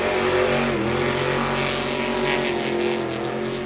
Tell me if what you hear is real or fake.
real